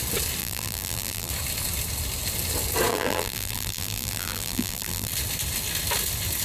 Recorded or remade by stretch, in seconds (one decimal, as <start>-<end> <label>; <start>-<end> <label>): 0.0-0.4 recorded; 0.4-1.3 remade; 1.3-2.9 recorded; 2.9-5.1 remade; 5.1-6.4 recorded